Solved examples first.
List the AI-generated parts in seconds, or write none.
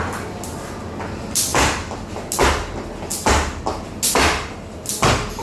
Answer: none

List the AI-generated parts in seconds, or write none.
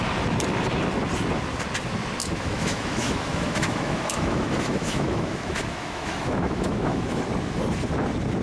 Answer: 2.2-7.2 (autoencoder, DAC-VAE)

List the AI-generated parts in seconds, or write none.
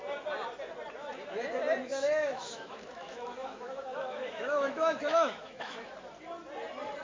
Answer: 1.9-5.9 (autoencoder, DAC-VAE)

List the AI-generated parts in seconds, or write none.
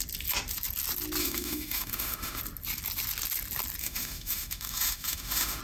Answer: 1.2-2.4 (autoencoder, DAC-VAE); 3.8-5.6